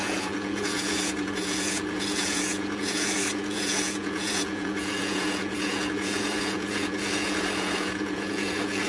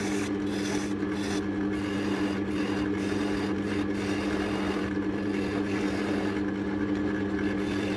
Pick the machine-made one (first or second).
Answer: first